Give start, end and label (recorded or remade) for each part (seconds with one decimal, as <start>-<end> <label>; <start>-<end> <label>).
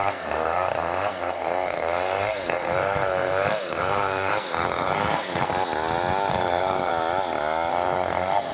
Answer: 0.0-5.5 remade; 5.5-6.3 recorded; 6.3-6.9 remade; 6.9-7.7 recorded; 7.7-8.5 remade